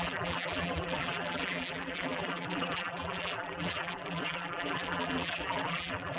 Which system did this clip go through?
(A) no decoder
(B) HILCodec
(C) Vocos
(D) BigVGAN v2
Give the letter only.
D